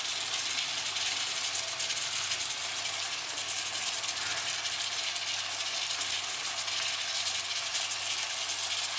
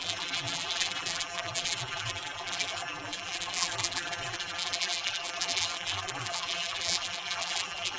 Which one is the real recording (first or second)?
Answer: first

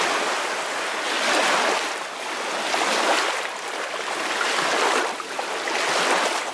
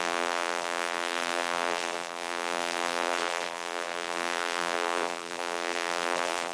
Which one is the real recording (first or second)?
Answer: first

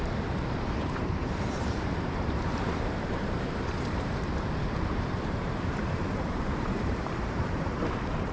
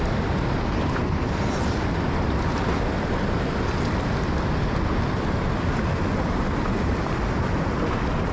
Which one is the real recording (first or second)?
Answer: second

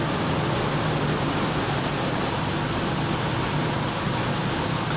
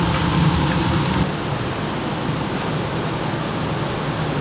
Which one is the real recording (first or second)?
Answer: first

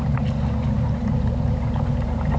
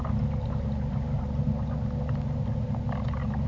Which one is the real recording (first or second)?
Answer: second